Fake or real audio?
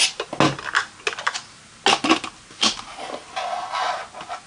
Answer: real